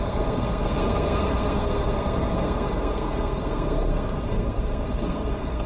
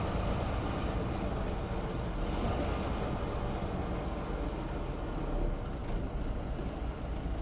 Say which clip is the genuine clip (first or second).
second